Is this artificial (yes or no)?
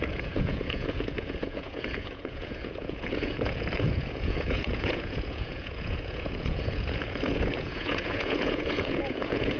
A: yes